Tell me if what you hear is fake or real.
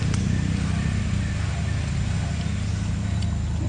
real